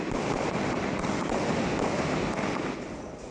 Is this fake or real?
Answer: real